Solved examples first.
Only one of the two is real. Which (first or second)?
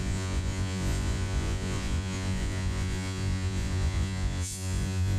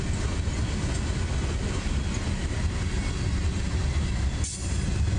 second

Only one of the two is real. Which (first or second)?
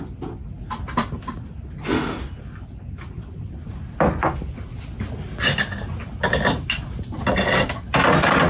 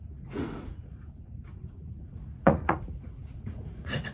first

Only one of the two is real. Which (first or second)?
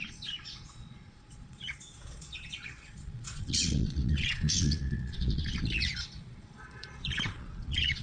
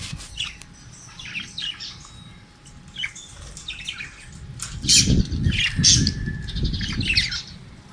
second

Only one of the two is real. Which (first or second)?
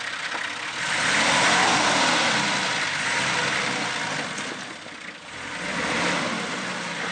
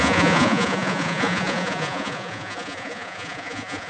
first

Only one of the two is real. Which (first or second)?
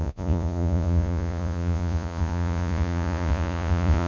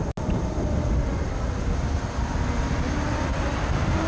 second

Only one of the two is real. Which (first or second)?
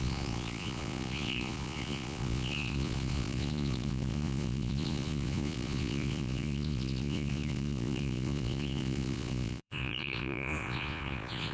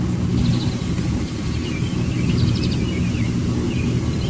second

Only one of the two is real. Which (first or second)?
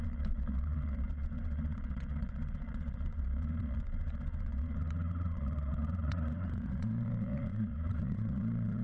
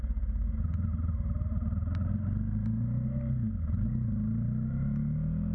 second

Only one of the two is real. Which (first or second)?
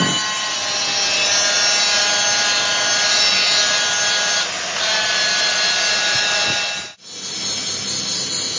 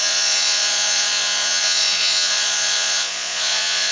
first